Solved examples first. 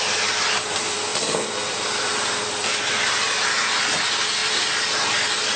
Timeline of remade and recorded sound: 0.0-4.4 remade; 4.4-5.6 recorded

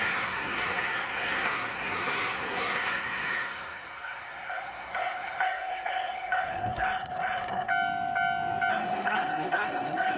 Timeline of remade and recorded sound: 0.0-7.7 remade; 7.7-8.7 recorded; 8.7-10.2 remade

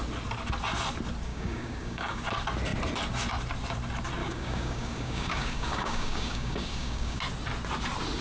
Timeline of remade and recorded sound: 0.0-1.3 recorded; 1.3-2.2 remade; 2.2-4.2 recorded; 4.2-7.2 remade; 7.2-8.2 recorded

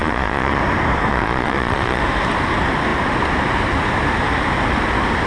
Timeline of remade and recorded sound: 0.0-0.6 remade; 0.6-1.1 recorded; 1.1-2.0 remade; 2.0-5.3 recorded

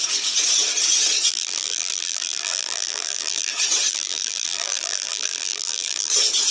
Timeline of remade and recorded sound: 0.0-1.3 recorded; 1.3-3.5 remade; 3.5-3.9 recorded; 3.9-6.1 remade; 6.1-6.5 recorded

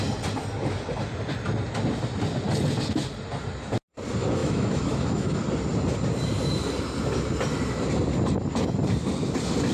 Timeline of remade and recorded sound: 0.0-4.4 recorded; 4.4-5.4 remade; 5.4-9.7 recorded